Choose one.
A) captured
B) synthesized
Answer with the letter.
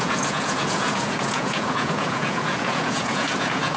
B